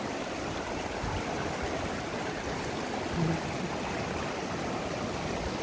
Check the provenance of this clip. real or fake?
real